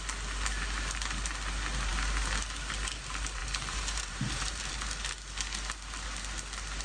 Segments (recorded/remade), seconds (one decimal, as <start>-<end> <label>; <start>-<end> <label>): 0.0-3.4 recorded; 3.4-4.7 remade; 4.7-6.8 recorded

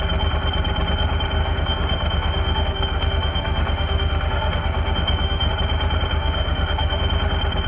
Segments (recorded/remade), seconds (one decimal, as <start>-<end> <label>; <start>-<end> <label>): 0.0-1.4 recorded; 1.4-5.5 remade; 5.5-6.2 recorded; 6.2-7.0 remade; 7.0-7.7 recorded